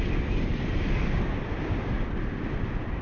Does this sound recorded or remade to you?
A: recorded